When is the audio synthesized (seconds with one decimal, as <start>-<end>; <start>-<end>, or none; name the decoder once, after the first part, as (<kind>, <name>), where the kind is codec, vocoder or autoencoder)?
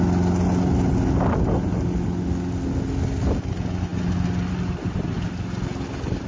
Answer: none